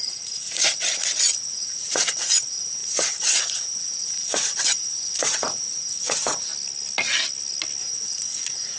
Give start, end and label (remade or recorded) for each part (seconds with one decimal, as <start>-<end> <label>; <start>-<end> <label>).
0.0-6.5 remade; 6.5-7.8 recorded; 7.8-8.8 remade